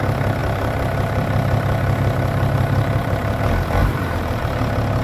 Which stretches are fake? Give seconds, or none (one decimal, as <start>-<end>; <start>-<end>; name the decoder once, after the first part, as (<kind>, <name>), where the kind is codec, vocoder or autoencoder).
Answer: 0.4-3.4 (vocoder, BigVGAN v2); 3.8-4.4